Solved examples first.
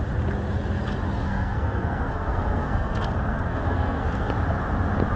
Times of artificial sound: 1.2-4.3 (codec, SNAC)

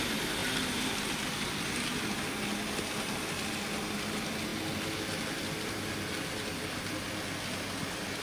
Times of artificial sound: none

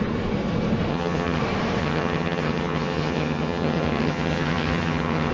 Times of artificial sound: 0.9-1.4 (vocoder, HiFi-GAN); 1.8-5.3

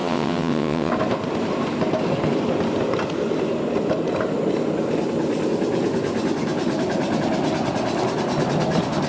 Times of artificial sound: 0.0-0.9 (vocoder, WaveNeXt)

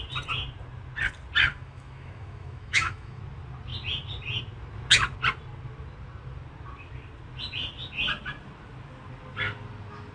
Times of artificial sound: 1.5-3.2 (autoencoder, DAC-VAE)

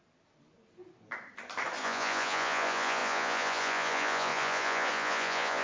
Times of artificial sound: 1.8-5.6 (vocoder, Vocos)

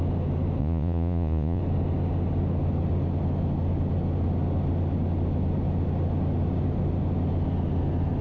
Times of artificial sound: 0.6-1.6 (vocoder, Vocos)